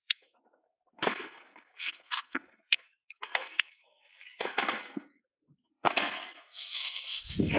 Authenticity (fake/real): fake